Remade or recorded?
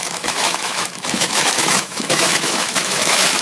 remade